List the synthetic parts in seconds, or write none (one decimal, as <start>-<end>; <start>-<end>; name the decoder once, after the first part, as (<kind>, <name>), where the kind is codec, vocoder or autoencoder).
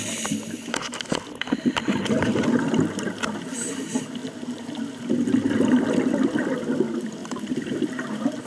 7.2-7.8 (vocoder, BigVGAN v2)